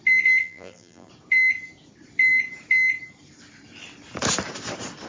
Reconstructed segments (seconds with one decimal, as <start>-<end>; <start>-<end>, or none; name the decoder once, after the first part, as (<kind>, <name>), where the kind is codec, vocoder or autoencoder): 0.4-1.1 (vocoder, BigVGAN v2)